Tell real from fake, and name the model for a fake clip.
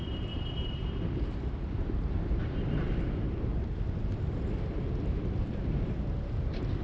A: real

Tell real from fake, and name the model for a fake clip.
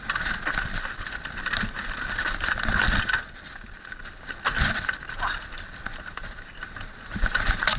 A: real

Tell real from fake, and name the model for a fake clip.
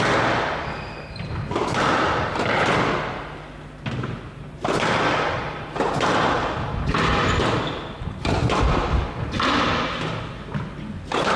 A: real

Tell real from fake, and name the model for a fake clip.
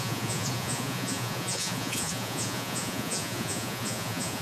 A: fake, vocoder, Vocos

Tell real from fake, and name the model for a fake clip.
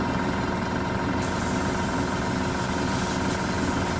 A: real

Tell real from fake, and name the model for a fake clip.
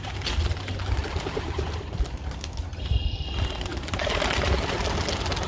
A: real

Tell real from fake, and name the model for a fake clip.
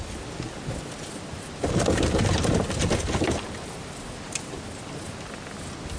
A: real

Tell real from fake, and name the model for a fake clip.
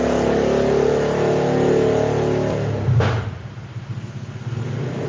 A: real